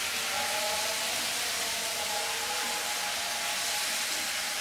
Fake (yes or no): no